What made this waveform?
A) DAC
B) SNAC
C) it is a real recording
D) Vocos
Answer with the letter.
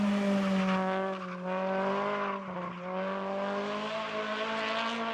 C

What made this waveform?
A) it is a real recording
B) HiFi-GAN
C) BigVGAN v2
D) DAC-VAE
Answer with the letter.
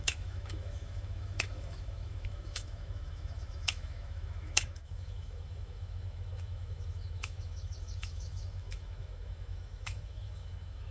D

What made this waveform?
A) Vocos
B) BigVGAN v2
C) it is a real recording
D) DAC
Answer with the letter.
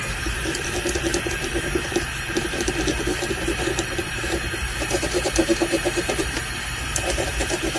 B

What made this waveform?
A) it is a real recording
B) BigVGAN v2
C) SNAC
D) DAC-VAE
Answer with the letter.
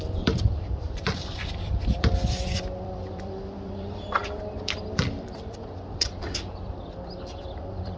B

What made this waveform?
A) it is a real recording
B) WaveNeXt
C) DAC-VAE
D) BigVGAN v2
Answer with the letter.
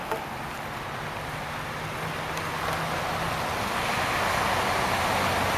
A